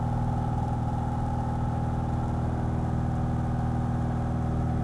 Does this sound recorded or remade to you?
recorded